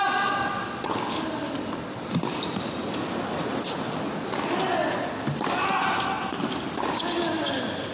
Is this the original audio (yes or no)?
yes